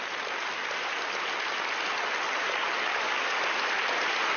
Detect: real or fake real